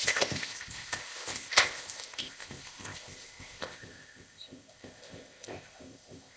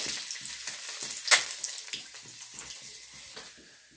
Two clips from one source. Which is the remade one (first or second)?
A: first